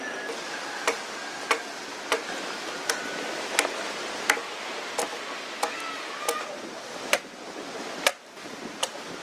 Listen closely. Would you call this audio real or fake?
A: real